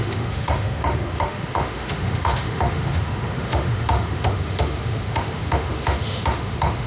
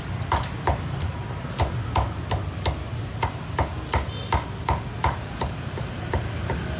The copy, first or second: first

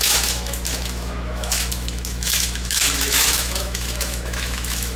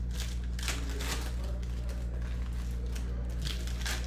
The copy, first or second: first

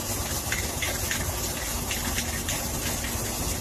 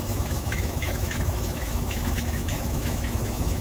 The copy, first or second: second